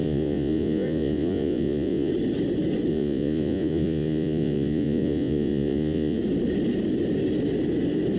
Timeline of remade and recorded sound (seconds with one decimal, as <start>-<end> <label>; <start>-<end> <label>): 0.0-2.1 remade; 2.1-2.9 recorded; 2.9-6.2 remade; 6.2-8.2 recorded